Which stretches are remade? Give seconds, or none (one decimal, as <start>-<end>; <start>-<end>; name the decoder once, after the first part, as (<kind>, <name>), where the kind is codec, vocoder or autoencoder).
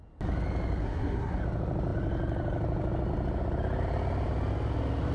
0.8-1.4 (codec, SNAC)